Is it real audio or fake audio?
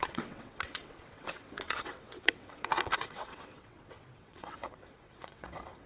fake